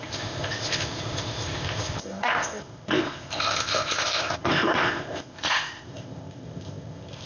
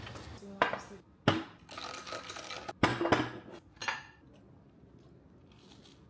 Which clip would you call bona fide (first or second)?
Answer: second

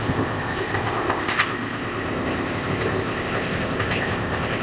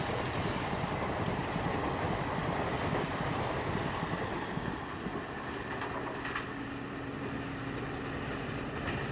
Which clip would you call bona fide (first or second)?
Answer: second